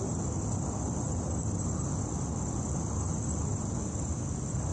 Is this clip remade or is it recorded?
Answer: recorded